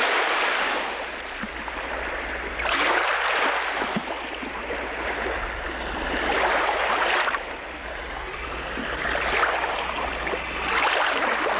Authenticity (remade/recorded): recorded